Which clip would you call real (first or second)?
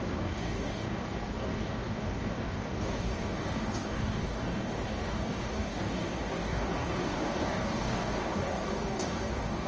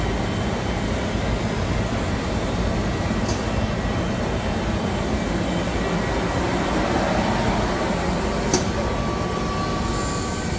second